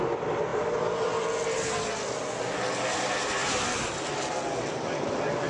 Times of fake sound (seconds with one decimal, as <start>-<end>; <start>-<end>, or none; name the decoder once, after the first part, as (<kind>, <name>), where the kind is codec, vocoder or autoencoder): 0.5-1.2 (vocoder, BigVGAN v2); 3.4-5.1

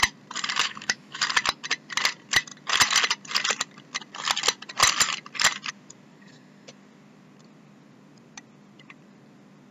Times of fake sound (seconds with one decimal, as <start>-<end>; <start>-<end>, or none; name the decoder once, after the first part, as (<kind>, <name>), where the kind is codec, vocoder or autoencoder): 0.6-1.2 (autoencoder, DAC-VAE)